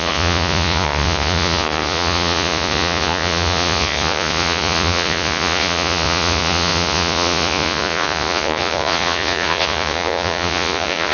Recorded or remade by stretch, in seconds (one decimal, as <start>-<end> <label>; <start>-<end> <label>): 0.0-11.1 remade